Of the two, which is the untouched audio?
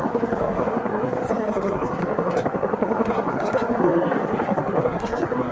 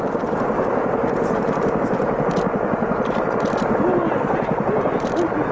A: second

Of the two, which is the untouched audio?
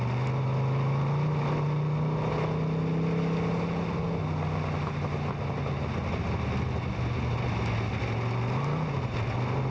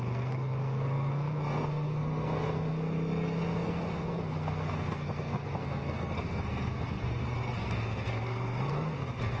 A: first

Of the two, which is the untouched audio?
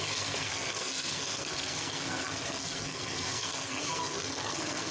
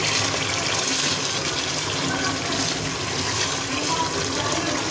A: second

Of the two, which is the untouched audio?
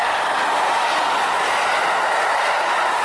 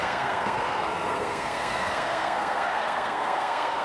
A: first